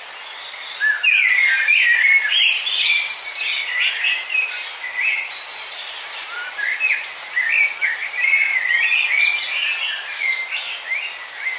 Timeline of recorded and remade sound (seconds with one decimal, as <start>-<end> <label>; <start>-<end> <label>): 0.0-1.4 recorded; 1.4-6.5 remade; 6.5-11.6 recorded

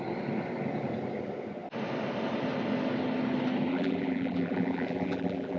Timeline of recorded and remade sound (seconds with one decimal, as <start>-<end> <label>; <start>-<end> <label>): 0.0-3.7 recorded; 3.7-5.6 remade

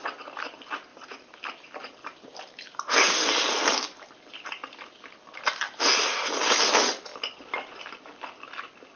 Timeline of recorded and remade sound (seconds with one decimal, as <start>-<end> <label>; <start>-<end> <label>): 0.0-0.9 recorded; 0.9-5.8 remade; 5.8-9.0 recorded

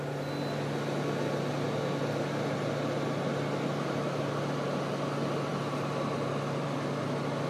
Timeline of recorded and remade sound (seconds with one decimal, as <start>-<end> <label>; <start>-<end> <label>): 0.0-7.5 recorded

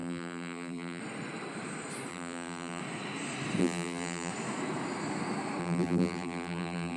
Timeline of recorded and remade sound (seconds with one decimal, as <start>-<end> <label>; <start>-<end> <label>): 0.0-1.0 remade; 1.0-2.1 recorded; 2.1-2.8 remade; 2.8-3.6 recorded; 3.6-4.3 remade; 4.3-5.6 recorded; 5.6-7.0 remade

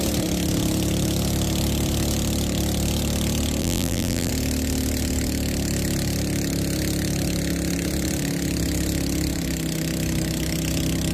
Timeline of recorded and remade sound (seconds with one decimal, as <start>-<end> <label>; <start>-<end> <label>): 0.0-3.6 recorded; 3.6-4.3 remade; 4.3-11.1 recorded

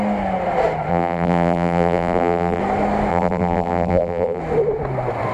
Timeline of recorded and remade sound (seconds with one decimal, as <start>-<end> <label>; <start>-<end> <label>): 0.0-0.9 recorded; 0.9-2.6 remade; 2.6-3.1 recorded; 3.1-4.4 remade; 4.4-5.3 recorded

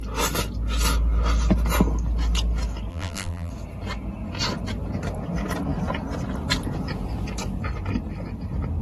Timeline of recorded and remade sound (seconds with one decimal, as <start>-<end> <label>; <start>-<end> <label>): 0.0-2.9 recorded; 2.9-3.5 remade; 3.5-8.8 recorded